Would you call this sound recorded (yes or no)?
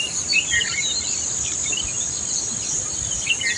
yes